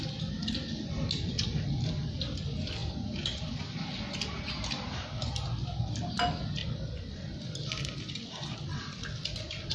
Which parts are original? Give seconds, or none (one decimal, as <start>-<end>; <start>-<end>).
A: 0.0-1.3; 1.9-2.8; 3.6-9.7